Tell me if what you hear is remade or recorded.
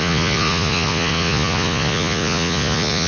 remade